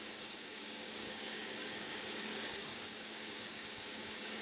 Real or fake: fake